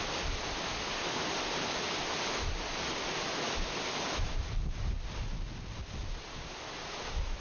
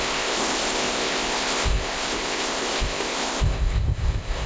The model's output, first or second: second